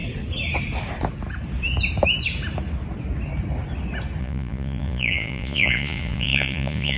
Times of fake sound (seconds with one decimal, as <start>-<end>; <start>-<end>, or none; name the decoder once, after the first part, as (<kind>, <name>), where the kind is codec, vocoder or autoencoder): 4.2-7.0 (vocoder, Vocos)